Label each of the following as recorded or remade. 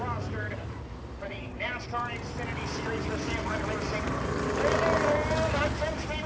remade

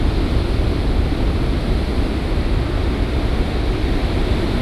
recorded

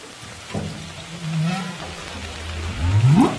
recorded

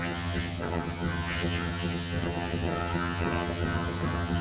remade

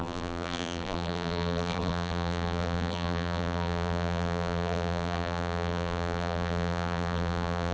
remade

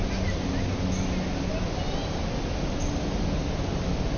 recorded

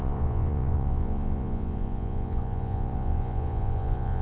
remade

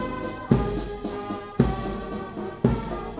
recorded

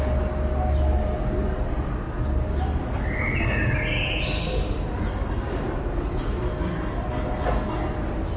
recorded